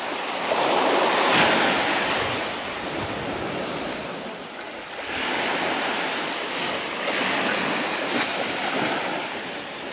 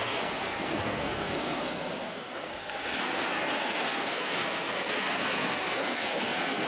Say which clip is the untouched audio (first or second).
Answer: first